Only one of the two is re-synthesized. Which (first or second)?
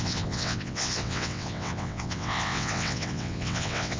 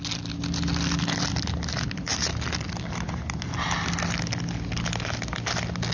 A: first